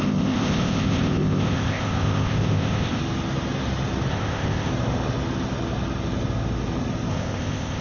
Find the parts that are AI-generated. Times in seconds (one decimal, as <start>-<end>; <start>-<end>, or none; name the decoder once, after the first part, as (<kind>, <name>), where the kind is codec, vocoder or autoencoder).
0.0-3.0 (codec, ZipCodec); 4.1-4.7; 7.1-7.8